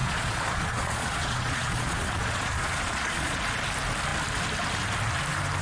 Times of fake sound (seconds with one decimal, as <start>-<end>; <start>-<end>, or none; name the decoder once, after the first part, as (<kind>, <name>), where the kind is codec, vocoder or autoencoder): 0.0-3.4 (vocoder, Vocos)